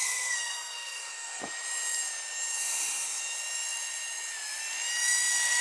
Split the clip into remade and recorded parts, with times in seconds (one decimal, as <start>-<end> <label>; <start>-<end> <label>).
0.0-1.4 remade; 1.4-5.6 recorded